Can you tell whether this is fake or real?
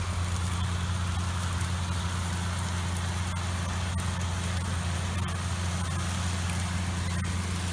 real